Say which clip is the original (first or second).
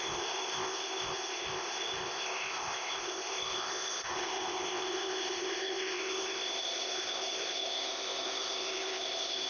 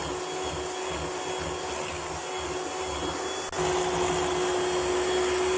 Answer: second